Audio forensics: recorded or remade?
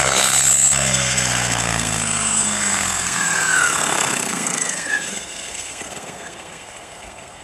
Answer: remade